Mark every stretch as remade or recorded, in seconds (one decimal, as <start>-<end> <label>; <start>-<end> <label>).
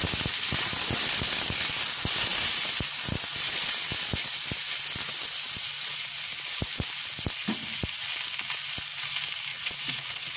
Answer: 0.0-9.5 recorded; 9.5-10.4 remade